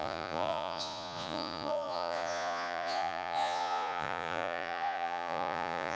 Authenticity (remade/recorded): remade